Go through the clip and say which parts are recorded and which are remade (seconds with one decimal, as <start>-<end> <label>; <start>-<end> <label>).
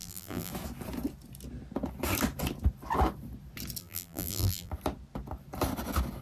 0.0-0.5 remade; 0.5-3.8 recorded; 3.8-4.7 remade; 4.7-6.2 recorded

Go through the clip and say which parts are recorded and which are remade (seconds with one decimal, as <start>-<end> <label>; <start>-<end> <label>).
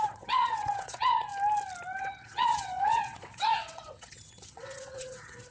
0.0-1.3 remade; 1.3-2.0 recorded; 2.0-5.5 remade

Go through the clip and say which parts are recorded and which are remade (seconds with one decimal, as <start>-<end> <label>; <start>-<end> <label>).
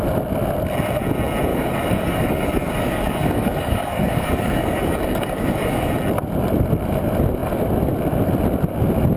0.0-1.5 recorded; 1.5-5.9 remade; 5.9-9.2 recorded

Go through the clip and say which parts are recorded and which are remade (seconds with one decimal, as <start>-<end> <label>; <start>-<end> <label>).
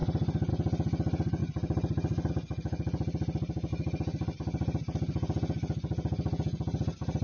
0.0-7.2 recorded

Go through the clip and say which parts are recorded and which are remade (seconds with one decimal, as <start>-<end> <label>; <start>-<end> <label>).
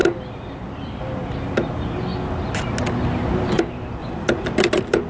0.0-1.0 remade; 1.0-4.0 recorded; 4.0-4.6 remade; 4.6-5.1 recorded